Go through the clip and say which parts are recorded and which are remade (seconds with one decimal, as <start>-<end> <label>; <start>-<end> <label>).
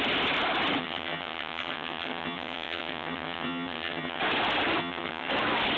0.0-0.8 recorded; 0.8-4.2 remade; 4.2-4.8 recorded; 4.8-5.3 remade; 5.3-5.8 recorded